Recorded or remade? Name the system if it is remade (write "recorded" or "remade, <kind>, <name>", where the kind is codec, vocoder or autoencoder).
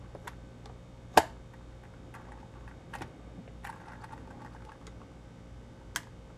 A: recorded